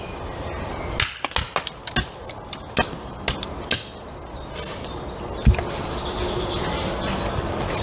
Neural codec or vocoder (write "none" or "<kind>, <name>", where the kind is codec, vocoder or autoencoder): none